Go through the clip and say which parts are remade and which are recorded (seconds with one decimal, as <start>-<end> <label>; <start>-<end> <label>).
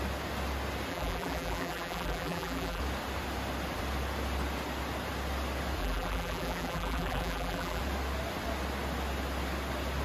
0.0-0.9 recorded; 0.9-2.8 remade; 2.8-5.8 recorded; 5.8-7.8 remade; 7.8-10.0 recorded